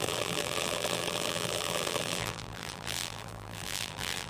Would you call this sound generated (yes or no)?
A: yes